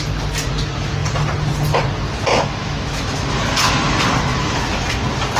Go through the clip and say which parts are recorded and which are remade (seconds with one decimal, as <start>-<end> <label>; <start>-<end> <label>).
0.0-2.3 recorded; 2.3-3.3 remade; 3.3-4.3 recorded; 4.3-5.0 remade; 5.0-5.4 recorded

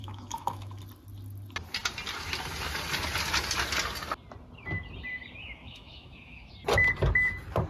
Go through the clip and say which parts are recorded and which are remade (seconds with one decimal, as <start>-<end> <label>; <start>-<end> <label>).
0.0-0.8 remade; 0.8-5.4 recorded; 5.4-6.5 remade; 6.5-7.7 recorded

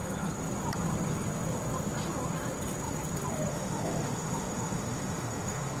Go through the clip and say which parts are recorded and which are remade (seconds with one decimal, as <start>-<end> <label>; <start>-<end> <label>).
0.0-3.5 recorded; 3.5-5.8 remade

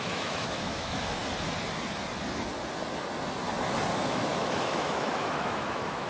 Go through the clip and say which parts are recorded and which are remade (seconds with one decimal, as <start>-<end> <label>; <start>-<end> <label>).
0.0-1.2 remade; 1.2-3.9 recorded; 3.9-6.1 remade